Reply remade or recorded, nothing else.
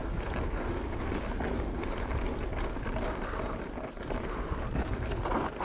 recorded